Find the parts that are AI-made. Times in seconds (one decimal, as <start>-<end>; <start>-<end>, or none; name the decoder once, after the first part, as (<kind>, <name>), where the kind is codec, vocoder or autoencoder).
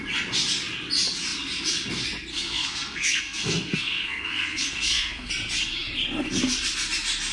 2.3-5.3 (codec, SNAC)